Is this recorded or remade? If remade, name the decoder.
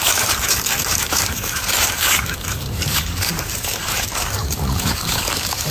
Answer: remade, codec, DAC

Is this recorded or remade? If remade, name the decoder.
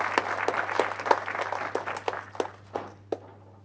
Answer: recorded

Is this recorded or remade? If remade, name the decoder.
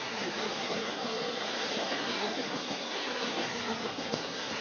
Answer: remade, codec, SNAC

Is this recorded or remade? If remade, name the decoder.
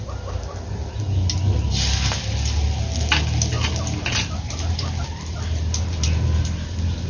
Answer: recorded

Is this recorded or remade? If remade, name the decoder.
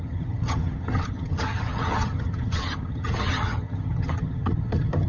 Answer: remade, vocoder, HiFi-GAN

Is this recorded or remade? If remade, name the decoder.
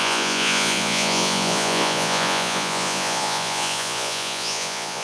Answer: remade, vocoder, Vocos